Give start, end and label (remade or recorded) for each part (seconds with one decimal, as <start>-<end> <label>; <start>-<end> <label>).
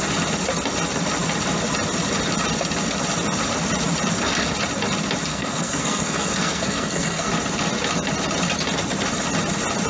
0.0-5.3 recorded; 5.3-7.3 remade; 7.3-9.9 recorded